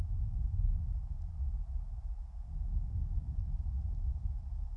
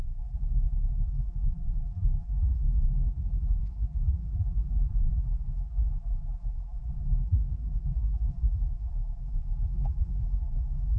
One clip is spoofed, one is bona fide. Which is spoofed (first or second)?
second